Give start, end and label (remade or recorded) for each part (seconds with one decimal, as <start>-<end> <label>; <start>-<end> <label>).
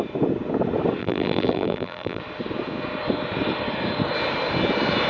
0.0-1.0 recorded; 1.0-2.2 remade; 2.2-5.1 recorded